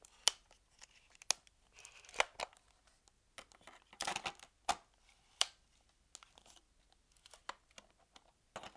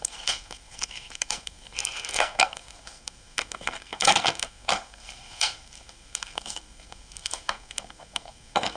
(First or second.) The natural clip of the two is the first